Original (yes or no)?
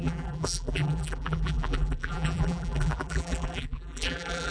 no